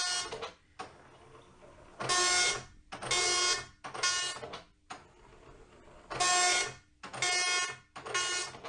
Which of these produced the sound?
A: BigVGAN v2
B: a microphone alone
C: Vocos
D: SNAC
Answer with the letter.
B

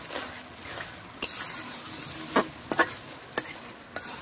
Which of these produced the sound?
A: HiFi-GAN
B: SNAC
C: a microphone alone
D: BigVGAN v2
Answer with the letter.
C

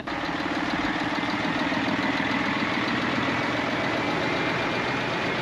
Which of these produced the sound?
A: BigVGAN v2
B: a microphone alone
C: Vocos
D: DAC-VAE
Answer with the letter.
B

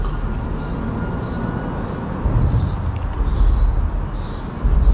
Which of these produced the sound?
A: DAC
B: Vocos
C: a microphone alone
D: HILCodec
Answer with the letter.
C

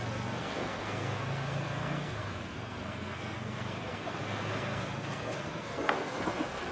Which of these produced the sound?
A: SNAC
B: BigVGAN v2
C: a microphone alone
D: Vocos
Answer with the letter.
A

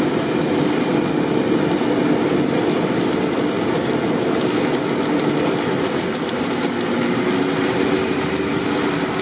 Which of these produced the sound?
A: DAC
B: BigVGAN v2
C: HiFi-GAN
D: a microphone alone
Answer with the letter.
D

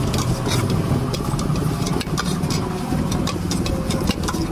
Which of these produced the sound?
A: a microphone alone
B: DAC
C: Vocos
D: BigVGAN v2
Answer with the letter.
A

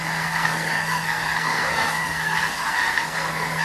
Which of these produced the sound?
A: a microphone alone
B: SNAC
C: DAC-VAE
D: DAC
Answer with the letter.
B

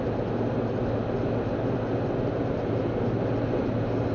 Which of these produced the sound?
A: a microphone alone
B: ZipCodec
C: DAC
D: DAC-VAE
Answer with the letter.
A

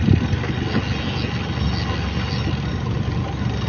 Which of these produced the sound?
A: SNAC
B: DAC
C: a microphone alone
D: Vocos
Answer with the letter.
C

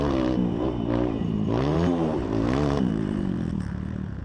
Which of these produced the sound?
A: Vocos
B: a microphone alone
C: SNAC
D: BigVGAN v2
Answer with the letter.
D